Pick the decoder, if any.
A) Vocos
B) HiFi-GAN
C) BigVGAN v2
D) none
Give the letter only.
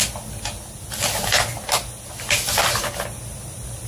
D